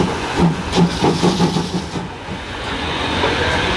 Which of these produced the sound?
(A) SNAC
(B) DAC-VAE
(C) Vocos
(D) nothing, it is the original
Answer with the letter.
C